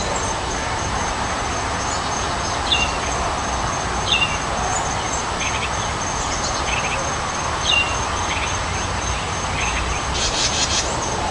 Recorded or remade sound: recorded